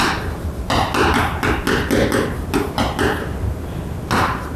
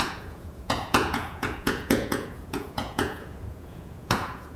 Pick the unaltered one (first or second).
first